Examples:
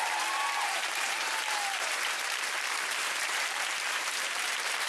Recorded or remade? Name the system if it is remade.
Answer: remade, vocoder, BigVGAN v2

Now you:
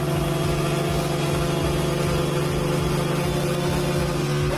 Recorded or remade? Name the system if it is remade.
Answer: recorded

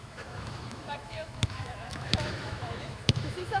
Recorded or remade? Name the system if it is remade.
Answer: remade, autoencoder, DAC-VAE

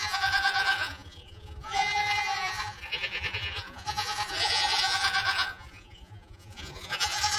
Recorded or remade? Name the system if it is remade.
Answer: remade, vocoder, Vocos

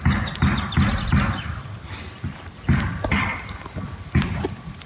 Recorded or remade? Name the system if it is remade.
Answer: recorded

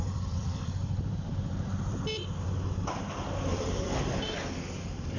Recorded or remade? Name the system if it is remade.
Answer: remade, vocoder, BigVGAN v2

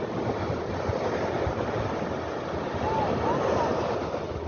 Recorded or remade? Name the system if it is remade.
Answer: recorded